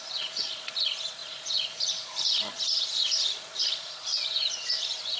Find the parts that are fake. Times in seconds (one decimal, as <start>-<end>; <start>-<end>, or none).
0.0-5.2

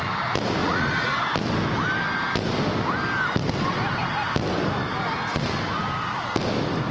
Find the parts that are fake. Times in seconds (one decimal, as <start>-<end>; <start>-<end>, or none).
0.6-1.2

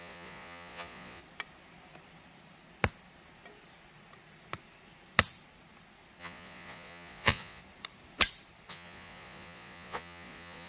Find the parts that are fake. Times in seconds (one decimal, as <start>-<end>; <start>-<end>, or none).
0.0-1.2; 6.2-7.6; 8.7-10.7

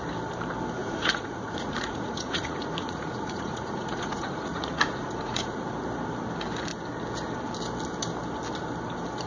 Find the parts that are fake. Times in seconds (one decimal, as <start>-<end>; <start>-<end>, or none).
0.8-5.8

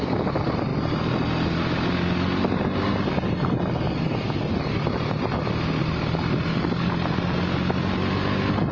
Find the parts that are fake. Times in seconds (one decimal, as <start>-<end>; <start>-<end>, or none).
none